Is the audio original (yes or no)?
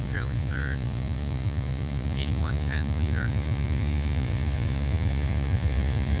no